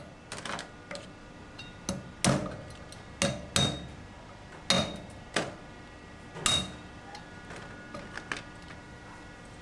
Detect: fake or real real